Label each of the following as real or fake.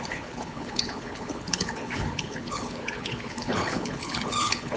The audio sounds fake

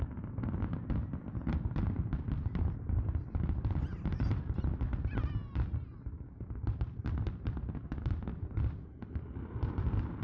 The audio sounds real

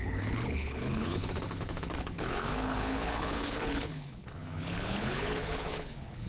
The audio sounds fake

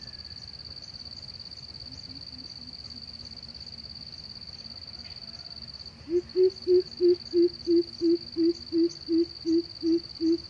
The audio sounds real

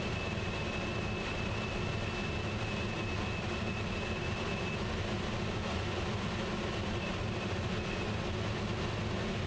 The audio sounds real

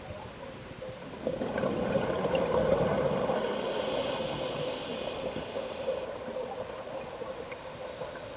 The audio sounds real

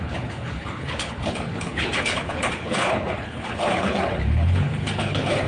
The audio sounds fake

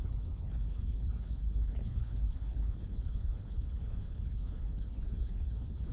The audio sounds fake